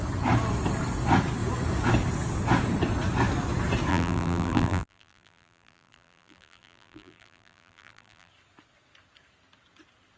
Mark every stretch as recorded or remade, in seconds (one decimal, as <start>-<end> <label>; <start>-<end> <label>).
0.0-3.9 recorded; 3.9-8.3 remade; 8.3-10.2 recorded